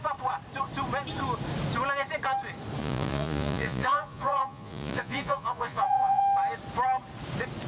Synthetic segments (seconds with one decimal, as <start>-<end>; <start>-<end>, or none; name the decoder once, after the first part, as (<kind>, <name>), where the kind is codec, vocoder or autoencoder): 2.8-6.2 (vocoder, Vocos)